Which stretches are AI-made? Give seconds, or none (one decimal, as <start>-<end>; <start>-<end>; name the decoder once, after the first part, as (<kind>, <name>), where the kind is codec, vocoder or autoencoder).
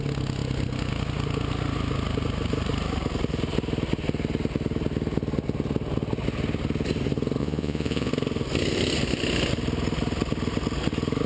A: 7.4-8.1 (vocoder, Vocos)